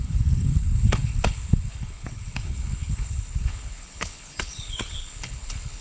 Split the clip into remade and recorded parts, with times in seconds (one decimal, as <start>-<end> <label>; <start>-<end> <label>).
0.0-5.8 remade